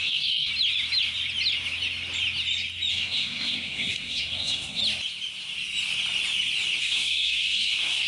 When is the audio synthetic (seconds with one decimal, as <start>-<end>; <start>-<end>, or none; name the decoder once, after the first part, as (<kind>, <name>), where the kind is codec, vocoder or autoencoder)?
0.0-0.5 (codec, SNAC); 2.9-4.8; 6.8-8.1